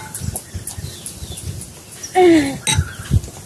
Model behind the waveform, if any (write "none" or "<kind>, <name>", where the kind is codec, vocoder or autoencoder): none